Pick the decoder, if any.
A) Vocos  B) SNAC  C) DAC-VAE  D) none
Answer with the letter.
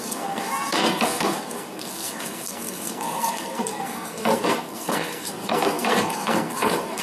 B